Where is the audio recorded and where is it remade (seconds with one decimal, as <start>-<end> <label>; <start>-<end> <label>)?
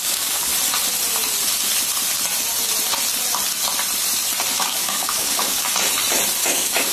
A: 0.0-0.5 remade; 0.5-4.6 recorded; 4.6-5.7 remade; 5.7-6.4 recorded; 6.4-6.9 remade